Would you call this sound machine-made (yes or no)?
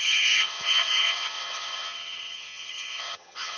yes